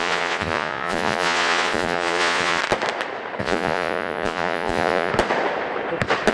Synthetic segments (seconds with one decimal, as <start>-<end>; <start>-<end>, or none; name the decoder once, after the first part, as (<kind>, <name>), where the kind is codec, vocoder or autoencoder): 0.0-2.6 (vocoder, Vocos); 3.4-5.1